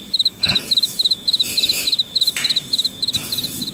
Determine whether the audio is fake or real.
fake